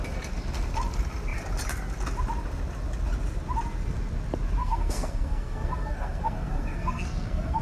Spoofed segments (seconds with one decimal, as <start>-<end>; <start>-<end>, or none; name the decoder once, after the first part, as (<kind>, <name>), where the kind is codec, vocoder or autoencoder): 4.6-7.6 (codec, SNAC)